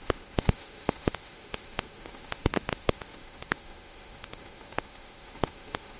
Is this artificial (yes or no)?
yes